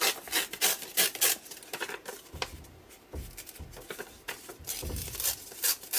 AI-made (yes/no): no